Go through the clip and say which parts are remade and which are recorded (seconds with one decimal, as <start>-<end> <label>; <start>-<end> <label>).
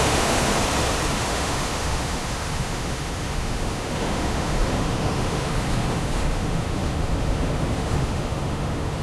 0.0-0.5 remade; 0.5-1.1 recorded; 1.1-9.0 remade